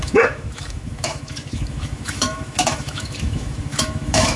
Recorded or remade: remade